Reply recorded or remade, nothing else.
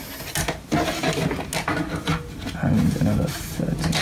recorded